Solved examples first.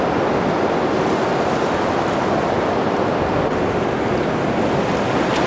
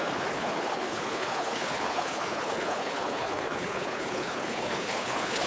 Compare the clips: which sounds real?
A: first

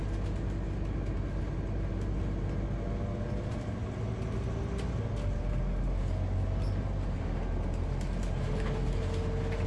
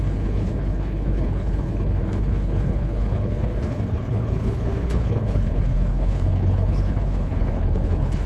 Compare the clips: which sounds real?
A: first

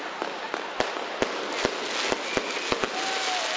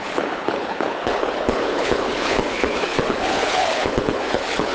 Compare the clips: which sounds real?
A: first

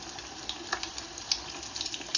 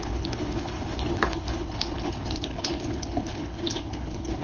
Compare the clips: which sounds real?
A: first